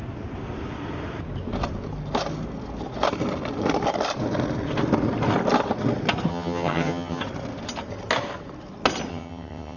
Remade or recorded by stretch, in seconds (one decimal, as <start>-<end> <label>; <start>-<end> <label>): 0.0-6.3 recorded; 6.3-7.2 remade; 7.2-9.1 recorded; 9.1-9.8 remade